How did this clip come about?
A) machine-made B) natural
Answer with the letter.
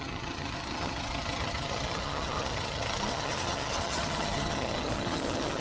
A